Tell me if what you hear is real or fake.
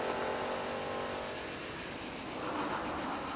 real